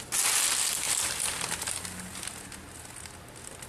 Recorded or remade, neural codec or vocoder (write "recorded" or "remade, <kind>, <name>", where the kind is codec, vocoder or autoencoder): recorded